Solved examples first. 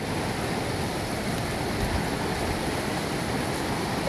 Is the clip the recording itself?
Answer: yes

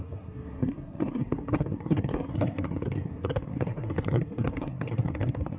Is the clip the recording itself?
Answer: no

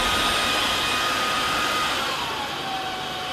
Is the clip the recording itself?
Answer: yes